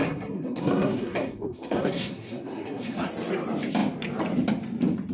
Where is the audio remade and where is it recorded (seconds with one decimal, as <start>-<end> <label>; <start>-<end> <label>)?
0.0-3.1 remade; 3.1-5.1 recorded